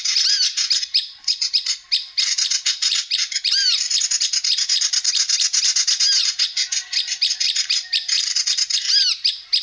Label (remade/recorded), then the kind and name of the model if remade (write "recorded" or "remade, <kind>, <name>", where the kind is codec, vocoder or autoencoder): recorded